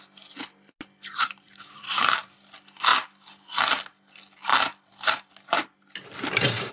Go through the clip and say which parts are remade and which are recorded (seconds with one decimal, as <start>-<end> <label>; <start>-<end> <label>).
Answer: 0.0-1.2 recorded; 1.2-2.4 remade; 2.4-6.7 recorded